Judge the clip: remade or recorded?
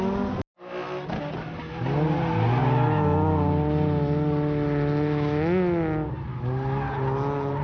recorded